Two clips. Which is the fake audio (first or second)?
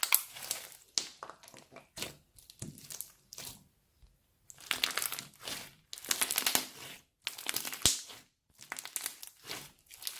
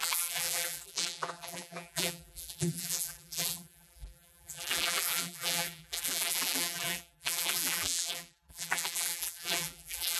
second